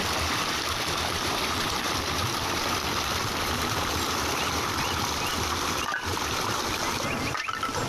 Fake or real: fake